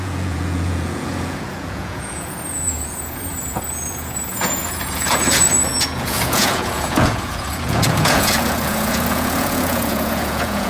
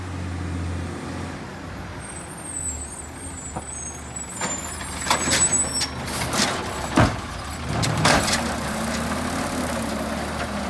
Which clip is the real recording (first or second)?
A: second